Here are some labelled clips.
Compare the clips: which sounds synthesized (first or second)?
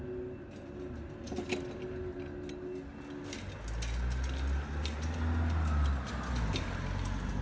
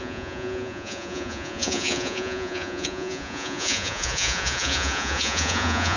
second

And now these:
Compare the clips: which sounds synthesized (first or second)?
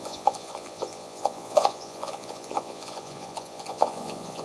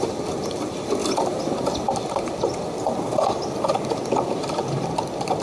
first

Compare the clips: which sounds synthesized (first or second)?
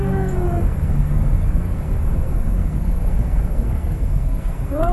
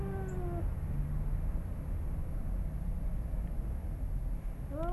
first